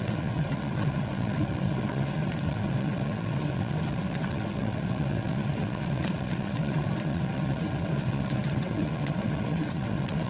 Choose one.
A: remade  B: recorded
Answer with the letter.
A